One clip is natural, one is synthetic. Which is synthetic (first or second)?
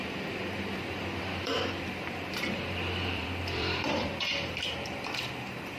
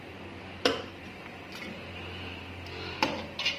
first